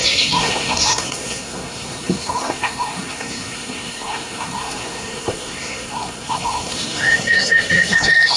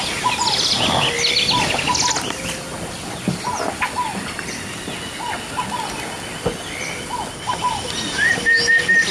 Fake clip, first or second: first